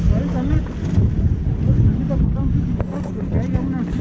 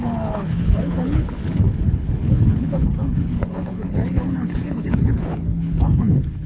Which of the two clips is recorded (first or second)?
first